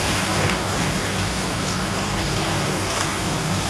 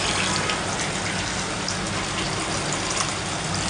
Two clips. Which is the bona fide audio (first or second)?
second